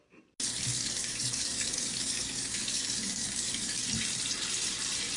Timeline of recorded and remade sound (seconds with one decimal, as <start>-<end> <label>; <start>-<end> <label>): 0.0-0.7 recorded; 0.7-3.8 remade; 3.8-5.2 recorded